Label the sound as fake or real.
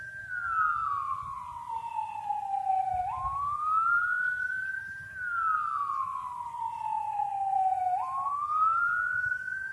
real